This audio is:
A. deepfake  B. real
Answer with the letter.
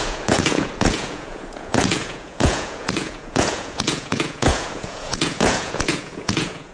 A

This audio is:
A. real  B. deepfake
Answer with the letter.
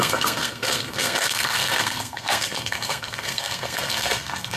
B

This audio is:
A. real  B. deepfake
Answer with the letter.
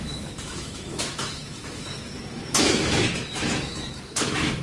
B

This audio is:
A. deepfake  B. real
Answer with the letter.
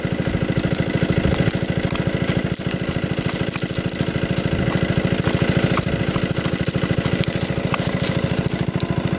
B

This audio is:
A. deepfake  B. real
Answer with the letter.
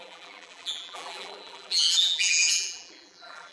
A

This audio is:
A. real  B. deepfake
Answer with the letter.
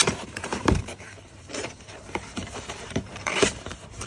B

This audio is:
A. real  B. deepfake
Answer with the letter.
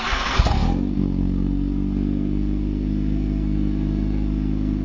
B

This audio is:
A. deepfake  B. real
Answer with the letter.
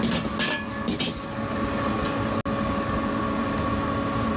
B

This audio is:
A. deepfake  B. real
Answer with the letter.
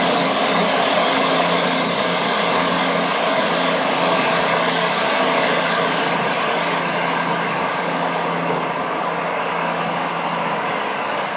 A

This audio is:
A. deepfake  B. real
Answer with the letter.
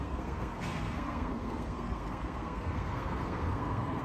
A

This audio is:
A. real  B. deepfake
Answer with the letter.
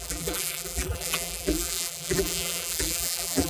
B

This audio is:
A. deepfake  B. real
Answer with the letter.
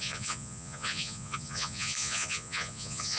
A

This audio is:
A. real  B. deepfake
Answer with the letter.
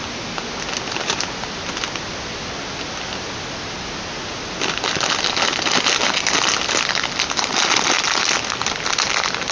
A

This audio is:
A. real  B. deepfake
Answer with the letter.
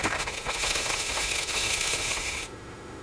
B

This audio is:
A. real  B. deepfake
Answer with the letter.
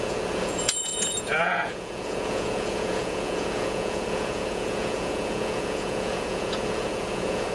B